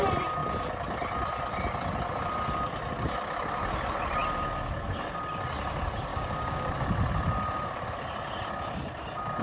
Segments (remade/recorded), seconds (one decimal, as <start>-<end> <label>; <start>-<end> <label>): 0.0-6.1 recorded; 6.1-6.7 remade; 6.7-9.4 recorded